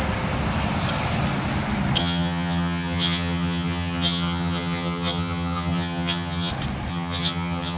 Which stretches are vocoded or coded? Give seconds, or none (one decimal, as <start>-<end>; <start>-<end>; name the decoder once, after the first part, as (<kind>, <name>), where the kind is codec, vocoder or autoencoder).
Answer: 2.0-6.5 (vocoder, HiFi-GAN); 6.9-7.8